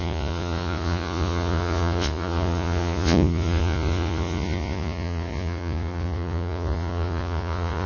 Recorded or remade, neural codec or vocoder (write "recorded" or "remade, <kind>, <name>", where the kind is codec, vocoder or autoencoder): remade, vocoder, Vocos